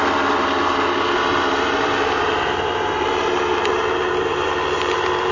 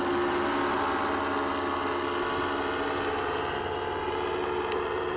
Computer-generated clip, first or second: first